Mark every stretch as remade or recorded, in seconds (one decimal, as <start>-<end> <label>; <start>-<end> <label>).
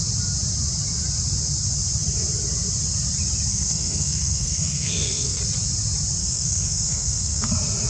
0.0-3.5 recorded; 3.5-5.4 remade; 5.4-6.2 recorded; 6.2-7.5 remade; 7.5-7.9 recorded